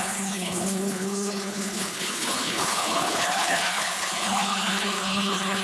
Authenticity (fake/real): fake